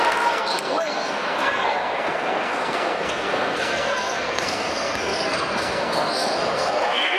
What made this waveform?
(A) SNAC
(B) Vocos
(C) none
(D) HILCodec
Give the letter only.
A